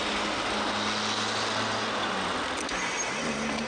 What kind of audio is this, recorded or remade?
recorded